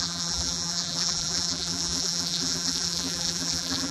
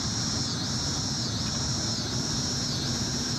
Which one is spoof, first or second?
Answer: first